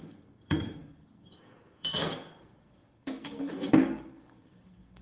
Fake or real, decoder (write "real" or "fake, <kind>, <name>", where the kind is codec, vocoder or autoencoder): fake, codec, SNAC